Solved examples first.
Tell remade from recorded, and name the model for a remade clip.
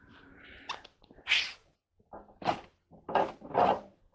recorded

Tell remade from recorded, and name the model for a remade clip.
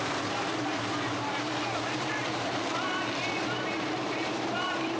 remade, vocoder, BigVGAN v2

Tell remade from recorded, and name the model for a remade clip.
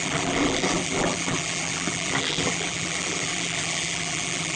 remade, vocoder, BigVGAN v2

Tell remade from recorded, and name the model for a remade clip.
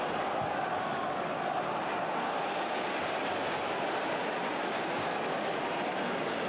recorded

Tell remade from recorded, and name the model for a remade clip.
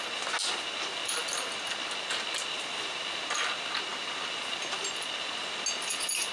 recorded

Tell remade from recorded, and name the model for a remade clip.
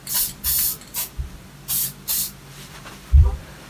remade, vocoder, BigVGAN v2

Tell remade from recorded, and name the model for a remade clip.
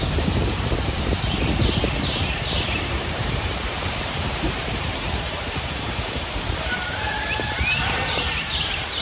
remade, vocoder, BigVGAN v2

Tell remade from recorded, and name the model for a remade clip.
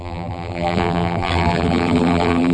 remade, vocoder, BigVGAN v2